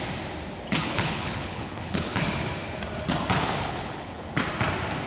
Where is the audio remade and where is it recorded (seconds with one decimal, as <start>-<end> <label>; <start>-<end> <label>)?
0.0-0.8 recorded; 0.8-2.2 remade; 2.2-3.4 recorded; 3.4-4.3 remade; 4.3-5.1 recorded